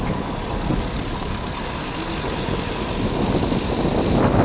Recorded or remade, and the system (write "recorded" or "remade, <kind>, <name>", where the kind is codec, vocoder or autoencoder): recorded